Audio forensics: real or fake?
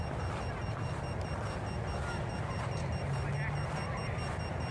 real